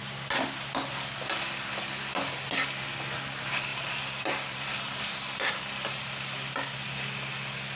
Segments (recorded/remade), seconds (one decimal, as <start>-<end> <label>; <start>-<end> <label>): 0.0-3.7 recorded; 3.7-5.6 remade; 5.6-7.8 recorded